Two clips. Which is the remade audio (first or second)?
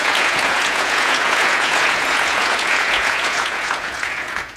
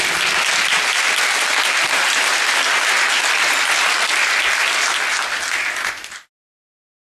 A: first